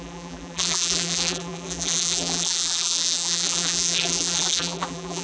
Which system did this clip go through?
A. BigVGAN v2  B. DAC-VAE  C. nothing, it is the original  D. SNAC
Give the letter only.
A